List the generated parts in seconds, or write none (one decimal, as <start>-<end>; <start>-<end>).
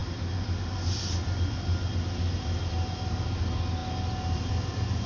none